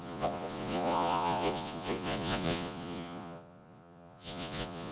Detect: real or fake fake